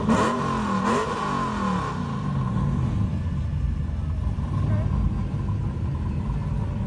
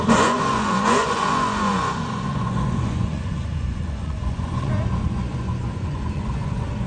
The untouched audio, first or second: first